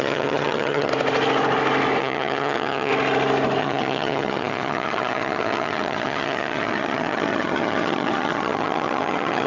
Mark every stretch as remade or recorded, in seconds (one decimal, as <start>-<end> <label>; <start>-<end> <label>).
0.0-0.9 remade; 0.9-2.0 recorded; 2.0-2.9 remade; 2.9-3.6 recorded; 3.6-9.5 remade

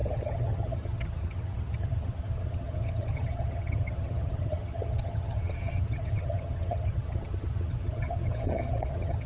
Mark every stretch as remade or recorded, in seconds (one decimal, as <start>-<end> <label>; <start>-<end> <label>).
0.0-9.3 remade

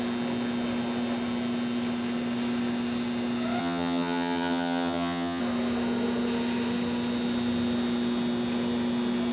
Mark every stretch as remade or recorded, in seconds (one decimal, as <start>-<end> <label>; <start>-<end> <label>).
0.0-3.6 recorded; 3.6-5.4 remade; 5.4-9.3 recorded

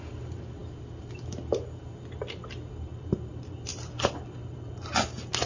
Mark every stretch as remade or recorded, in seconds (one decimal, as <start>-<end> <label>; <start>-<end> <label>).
0.0-5.5 recorded

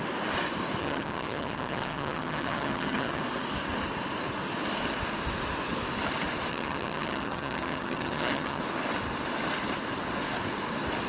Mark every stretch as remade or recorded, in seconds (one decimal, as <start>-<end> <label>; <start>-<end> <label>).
0.0-0.8 recorded; 0.8-3.2 remade; 3.2-6.5 recorded; 6.5-8.6 remade; 8.6-11.1 recorded